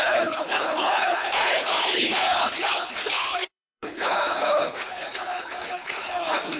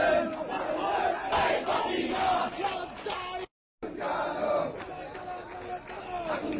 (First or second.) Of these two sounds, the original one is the second